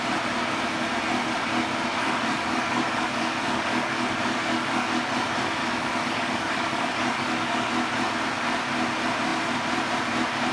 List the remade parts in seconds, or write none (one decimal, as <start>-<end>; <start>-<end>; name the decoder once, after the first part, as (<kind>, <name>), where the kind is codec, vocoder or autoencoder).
1.9-5.0 (codec, DAC); 5.6-7.7